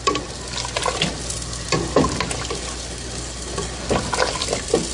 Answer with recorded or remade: recorded